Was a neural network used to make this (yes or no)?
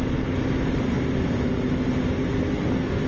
no